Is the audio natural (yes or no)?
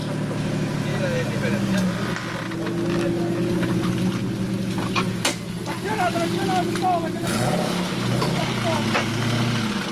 yes